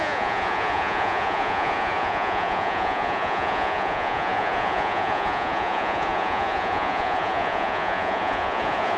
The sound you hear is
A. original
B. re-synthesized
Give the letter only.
B